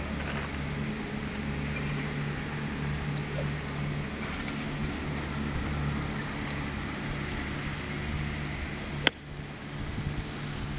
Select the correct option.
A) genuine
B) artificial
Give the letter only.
A